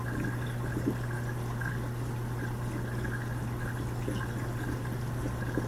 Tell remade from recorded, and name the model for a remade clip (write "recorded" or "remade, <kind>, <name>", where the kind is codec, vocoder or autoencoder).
recorded